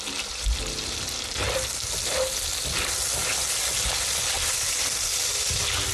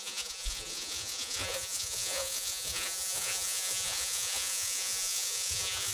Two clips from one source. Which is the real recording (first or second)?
first